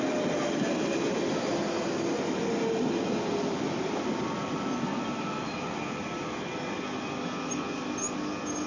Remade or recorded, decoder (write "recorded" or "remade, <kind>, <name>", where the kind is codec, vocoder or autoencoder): recorded